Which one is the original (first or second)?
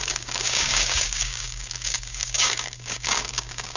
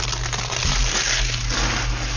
second